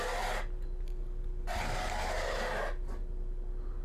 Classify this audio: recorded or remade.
recorded